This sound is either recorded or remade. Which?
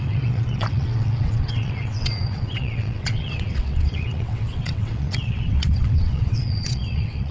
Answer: remade